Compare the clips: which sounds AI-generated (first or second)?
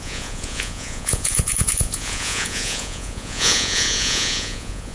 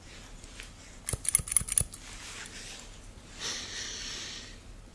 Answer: first